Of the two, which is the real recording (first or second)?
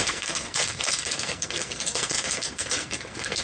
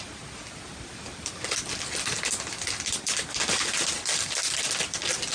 second